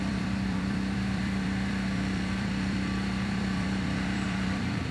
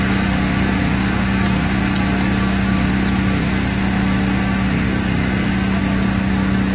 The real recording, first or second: second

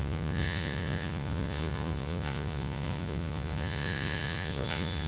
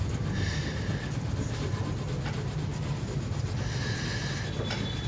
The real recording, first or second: second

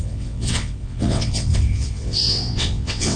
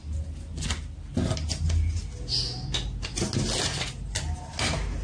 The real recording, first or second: second